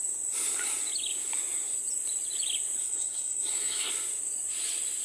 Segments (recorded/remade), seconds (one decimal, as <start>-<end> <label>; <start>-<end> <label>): 0.0-2.8 recorded; 2.8-3.9 remade; 3.9-5.0 recorded

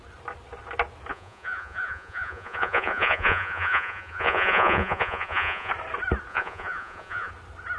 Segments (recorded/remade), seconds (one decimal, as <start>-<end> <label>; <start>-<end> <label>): 0.0-1.1 recorded; 1.1-5.7 remade; 5.7-6.3 recorded; 6.3-7.3 remade; 7.3-7.8 recorded

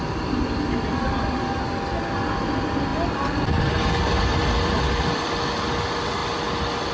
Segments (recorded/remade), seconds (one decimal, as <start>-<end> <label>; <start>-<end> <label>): 0.0-2.9 recorded; 2.9-3.6 remade; 3.6-4.3 recorded; 4.3-5.5 remade; 5.5-6.9 recorded

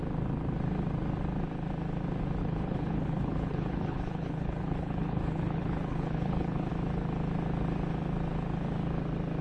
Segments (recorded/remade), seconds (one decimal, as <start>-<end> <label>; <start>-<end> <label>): 0.0-2.4 recorded; 2.4-6.7 remade; 6.7-9.4 recorded

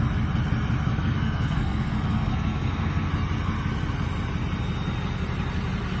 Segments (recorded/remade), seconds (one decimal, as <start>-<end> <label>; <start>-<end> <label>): 0.0-0.9 recorded; 0.9-3.1 remade; 3.1-6.0 recorded